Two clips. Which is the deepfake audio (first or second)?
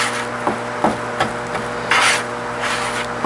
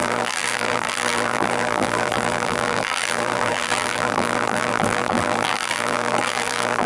second